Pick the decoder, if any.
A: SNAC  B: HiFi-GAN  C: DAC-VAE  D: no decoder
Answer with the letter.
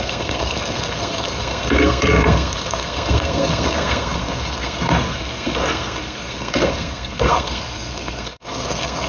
A